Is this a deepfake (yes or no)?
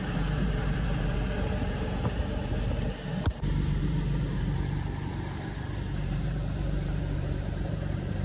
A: yes